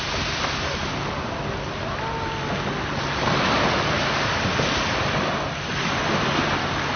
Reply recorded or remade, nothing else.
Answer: recorded